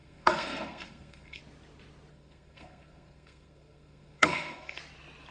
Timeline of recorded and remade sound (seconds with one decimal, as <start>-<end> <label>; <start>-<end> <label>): 0.0-1.4 remade; 1.4-2.1 recorded; 2.1-4.8 remade; 4.8-5.3 recorded